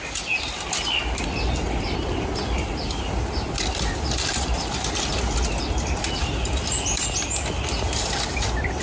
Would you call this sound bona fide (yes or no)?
yes